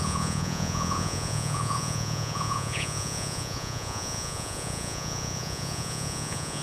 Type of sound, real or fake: fake